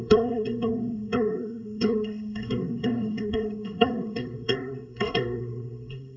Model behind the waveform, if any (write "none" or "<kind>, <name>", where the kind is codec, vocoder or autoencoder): codec, SNAC